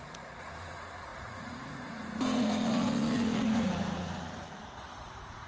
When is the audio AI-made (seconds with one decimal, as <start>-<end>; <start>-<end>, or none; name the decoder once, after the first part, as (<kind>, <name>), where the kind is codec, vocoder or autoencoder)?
0.0-5.5 (vocoder, Vocos)